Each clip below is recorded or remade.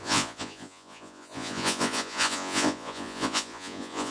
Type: remade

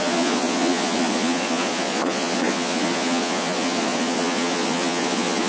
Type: remade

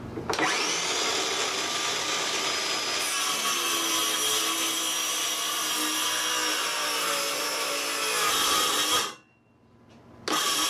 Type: recorded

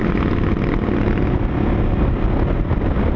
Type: recorded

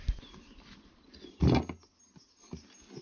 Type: recorded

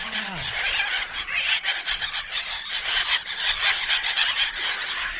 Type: remade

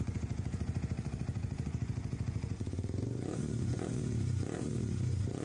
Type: remade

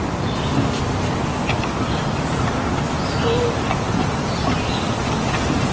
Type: recorded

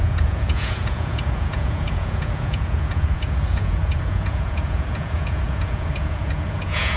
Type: remade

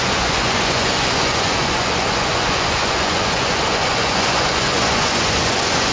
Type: remade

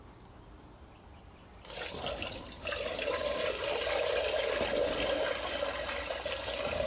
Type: recorded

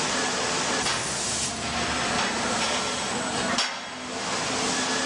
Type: recorded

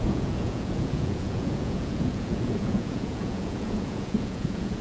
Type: remade